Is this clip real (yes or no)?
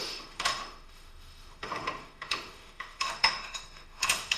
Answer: no